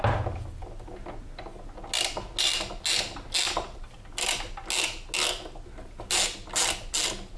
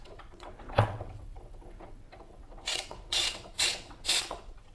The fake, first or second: second